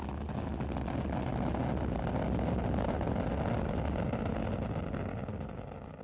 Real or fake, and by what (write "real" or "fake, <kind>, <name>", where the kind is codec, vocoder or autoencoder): real